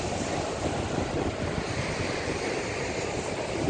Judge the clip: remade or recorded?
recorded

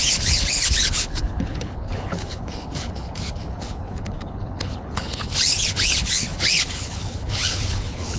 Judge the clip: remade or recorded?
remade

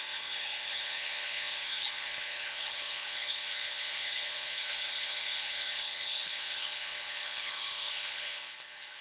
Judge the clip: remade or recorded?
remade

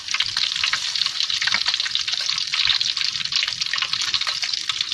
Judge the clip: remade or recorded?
recorded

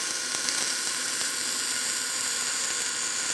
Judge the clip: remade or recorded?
recorded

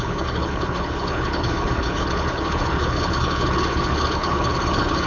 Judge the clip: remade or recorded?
remade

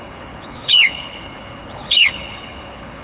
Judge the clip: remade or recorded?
remade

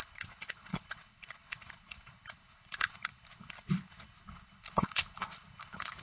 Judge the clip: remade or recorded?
remade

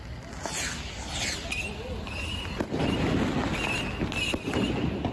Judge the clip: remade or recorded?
recorded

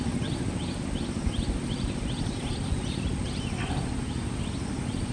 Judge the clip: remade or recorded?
recorded